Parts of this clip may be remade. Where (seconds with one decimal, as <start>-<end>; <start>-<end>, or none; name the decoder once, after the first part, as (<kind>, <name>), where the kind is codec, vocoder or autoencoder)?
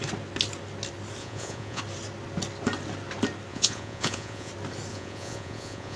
1.2-1.8 (vocoder, Vocos); 3.5-4.5; 4.9-6.0